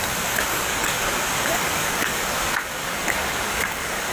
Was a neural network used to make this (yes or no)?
yes